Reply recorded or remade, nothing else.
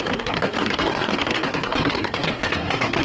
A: remade